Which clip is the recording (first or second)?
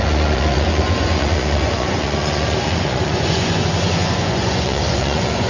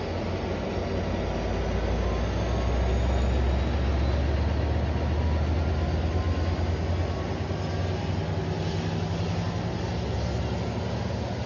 second